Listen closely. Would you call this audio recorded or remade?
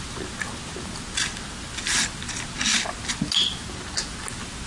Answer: recorded